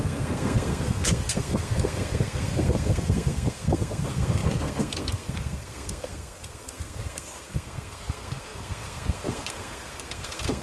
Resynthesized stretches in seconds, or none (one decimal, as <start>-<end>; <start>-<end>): 0.0-10.6